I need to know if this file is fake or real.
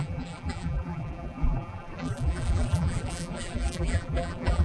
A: fake